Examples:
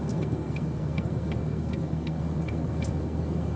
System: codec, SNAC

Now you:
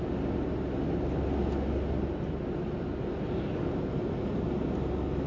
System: none